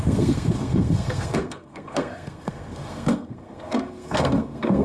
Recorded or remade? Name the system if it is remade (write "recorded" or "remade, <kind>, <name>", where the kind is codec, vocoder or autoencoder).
remade, codec, SNAC